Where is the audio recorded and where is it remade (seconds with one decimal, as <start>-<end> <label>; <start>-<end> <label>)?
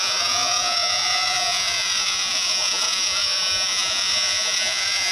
0.0-5.1 remade